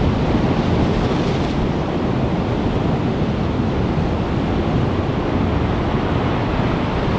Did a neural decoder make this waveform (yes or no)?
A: no